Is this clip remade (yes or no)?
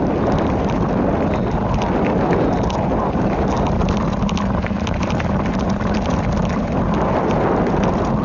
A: no